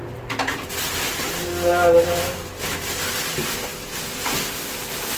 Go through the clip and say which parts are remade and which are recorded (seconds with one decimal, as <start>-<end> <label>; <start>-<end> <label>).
0.0-3.1 remade; 3.1-5.2 recorded